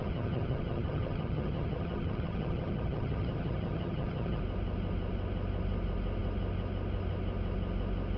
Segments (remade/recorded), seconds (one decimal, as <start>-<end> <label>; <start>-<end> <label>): 0.0-4.4 remade; 4.4-8.2 recorded

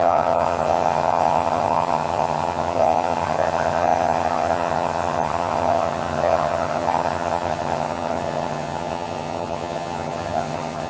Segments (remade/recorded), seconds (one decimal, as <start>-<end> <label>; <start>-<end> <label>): 0.0-10.9 remade

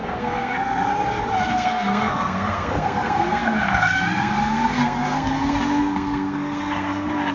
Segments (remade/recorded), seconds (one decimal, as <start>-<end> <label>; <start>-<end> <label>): 0.0-0.9 remade; 0.9-1.5 recorded; 1.5-7.3 remade

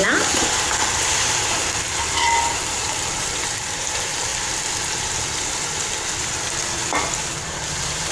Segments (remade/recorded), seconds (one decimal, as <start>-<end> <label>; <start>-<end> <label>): 0.0-1.6 remade; 1.6-2.5 recorded; 2.5-4.3 remade; 4.3-7.2 recorded; 7.2-8.1 remade

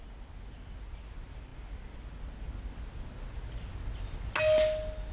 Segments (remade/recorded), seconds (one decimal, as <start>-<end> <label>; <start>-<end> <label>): 0.0-5.1 recorded

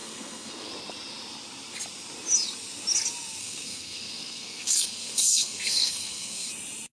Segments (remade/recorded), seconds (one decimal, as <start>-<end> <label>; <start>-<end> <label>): 0.0-0.7 remade; 0.7-3.4 recorded; 3.4-6.5 remade; 6.5-7.0 recorded

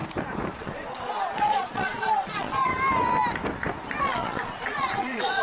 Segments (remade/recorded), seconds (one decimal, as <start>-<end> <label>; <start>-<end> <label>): 0.0-0.6 recorded; 0.6-2.7 remade; 2.7-4.0 recorded; 4.0-5.4 remade

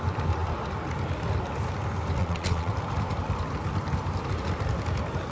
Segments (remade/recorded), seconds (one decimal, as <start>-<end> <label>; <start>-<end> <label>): 0.0-2.2 recorded; 2.2-2.7 remade; 2.7-5.3 recorded